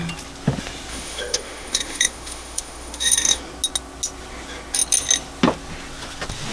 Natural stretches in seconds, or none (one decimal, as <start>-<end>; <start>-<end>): 0.0-0.9; 3.4-6.5